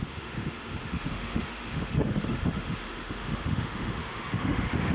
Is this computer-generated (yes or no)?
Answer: yes